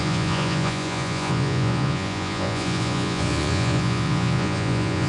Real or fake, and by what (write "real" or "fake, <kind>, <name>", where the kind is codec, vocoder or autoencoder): fake, vocoder, Vocos